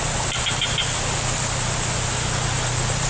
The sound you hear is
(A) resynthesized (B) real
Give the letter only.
B